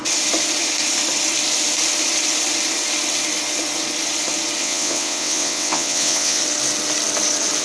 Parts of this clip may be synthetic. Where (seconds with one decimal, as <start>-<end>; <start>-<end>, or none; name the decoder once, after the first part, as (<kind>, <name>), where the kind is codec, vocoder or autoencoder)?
4.6-6.4 (vocoder, WaveNeXt)

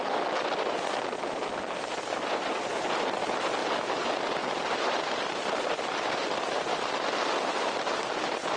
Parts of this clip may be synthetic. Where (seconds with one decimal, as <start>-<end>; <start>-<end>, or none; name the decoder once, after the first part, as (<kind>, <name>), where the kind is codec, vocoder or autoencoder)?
3.6-5.2 (vocoder, BigVGAN v2)

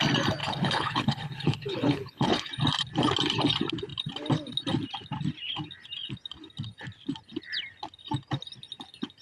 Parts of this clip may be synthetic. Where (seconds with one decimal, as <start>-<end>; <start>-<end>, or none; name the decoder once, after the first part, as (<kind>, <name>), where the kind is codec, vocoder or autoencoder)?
0.4-2.5 (codec, HILCodec)

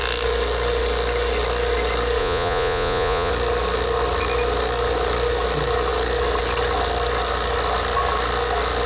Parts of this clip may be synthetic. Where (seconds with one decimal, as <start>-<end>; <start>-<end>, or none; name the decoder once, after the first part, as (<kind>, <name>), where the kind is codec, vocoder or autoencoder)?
2.2-3.3 (vocoder, Vocos)